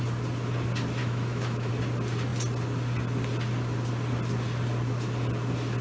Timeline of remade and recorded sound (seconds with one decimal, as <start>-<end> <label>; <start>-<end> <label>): 0.0-1.0 recorded; 1.0-1.7 remade; 1.7-5.8 recorded